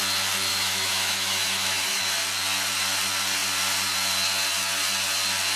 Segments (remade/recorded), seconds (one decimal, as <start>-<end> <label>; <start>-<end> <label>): 0.0-0.5 recorded; 0.5-2.0 remade; 2.0-5.6 recorded